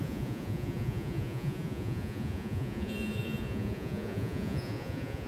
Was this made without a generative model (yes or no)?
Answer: no